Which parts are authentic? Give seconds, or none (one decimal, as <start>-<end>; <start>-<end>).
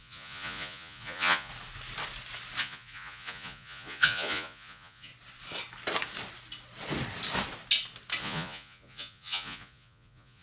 1.5-2.6; 5.1-8.2